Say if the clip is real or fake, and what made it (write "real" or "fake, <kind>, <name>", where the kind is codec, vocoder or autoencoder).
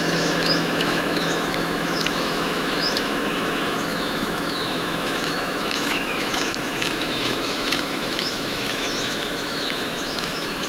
fake, autoencoder, DAC-VAE